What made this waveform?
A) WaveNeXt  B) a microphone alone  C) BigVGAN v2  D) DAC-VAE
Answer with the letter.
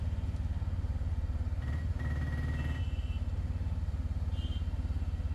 B